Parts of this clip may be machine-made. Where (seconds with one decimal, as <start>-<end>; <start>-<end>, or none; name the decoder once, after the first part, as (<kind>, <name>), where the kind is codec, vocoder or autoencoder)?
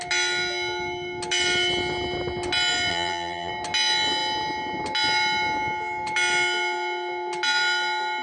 2.9-3.5 (vocoder, BigVGAN v2)